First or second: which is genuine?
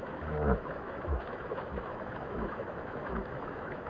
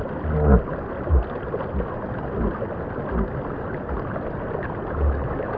second